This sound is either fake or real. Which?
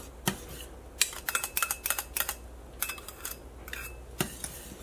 real